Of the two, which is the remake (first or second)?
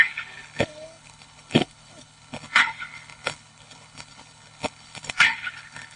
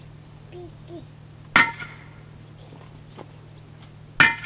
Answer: first